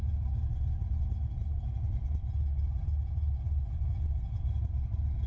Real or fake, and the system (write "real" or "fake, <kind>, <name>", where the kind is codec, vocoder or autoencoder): real